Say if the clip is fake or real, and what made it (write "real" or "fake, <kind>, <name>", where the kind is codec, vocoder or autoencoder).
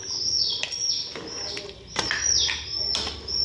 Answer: real